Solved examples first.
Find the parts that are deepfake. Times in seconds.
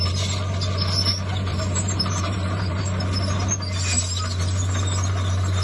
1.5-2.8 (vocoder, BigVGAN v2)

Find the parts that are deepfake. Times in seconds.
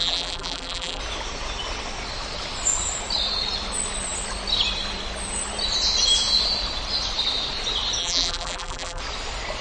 0.0-1.0 (vocoder, BigVGAN v2); 8.0-9.0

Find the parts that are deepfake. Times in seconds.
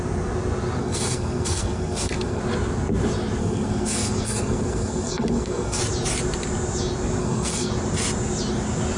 0.8-2.4 (codec, SNAC); 3.4-5.8; 7.2-7.7